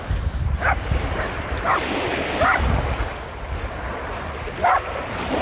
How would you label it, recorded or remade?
recorded